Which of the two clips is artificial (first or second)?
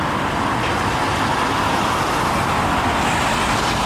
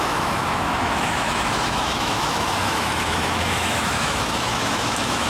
second